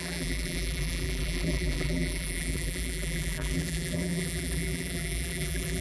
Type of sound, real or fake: fake